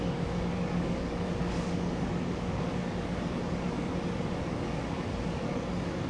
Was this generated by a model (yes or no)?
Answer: yes